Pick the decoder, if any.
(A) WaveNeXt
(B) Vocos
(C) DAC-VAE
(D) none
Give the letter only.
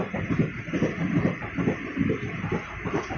D